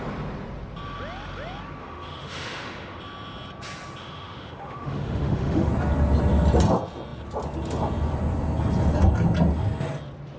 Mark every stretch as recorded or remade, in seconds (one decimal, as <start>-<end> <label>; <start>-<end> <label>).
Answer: 0.0-1.8 recorded; 1.8-3.0 remade; 3.0-4.0 recorded; 4.0-5.7 remade; 5.7-10.4 recorded